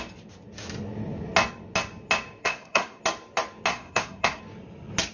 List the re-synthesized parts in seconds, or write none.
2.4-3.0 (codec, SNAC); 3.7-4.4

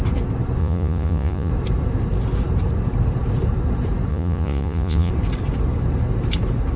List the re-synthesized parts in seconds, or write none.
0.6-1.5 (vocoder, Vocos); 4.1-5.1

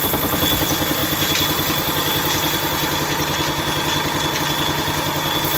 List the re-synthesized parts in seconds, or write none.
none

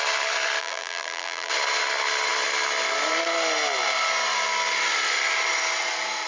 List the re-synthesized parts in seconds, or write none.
0.6-1.5 (vocoder, BigVGAN v2)